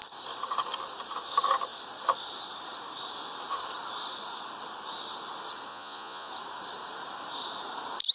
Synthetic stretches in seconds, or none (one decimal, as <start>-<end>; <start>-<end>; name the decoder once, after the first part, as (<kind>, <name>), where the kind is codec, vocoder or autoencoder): 5.7-6.3 (vocoder, Vocos)